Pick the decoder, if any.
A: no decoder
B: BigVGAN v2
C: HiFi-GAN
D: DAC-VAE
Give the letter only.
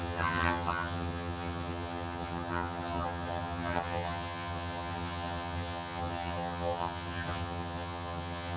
C